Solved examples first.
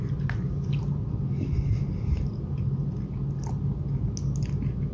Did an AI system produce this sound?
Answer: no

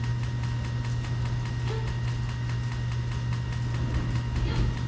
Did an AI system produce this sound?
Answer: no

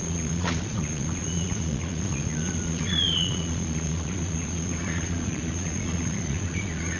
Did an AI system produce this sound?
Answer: yes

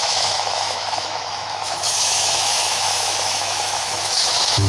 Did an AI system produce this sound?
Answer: yes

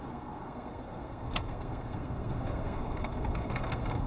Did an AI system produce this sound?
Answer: yes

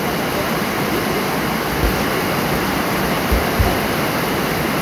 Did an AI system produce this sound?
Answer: no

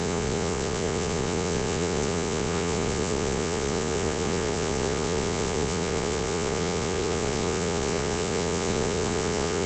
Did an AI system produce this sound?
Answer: yes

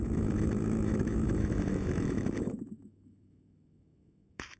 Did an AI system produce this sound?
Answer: yes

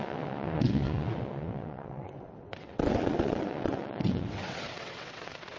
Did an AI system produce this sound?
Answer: yes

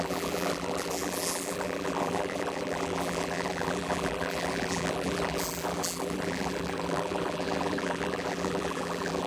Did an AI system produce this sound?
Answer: yes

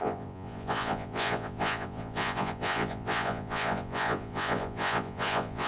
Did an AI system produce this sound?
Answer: yes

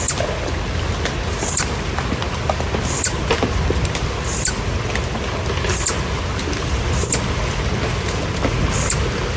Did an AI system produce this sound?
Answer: no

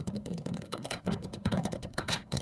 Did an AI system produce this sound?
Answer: yes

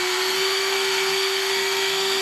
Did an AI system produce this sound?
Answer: yes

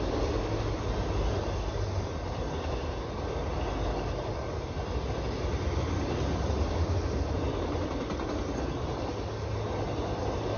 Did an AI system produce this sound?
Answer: no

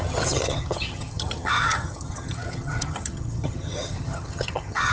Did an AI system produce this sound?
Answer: yes